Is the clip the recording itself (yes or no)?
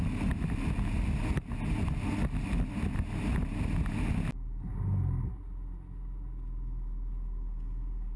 yes